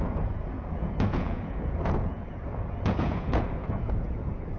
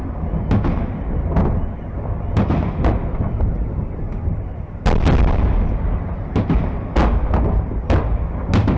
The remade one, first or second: first